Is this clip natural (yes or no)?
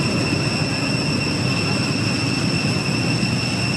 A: yes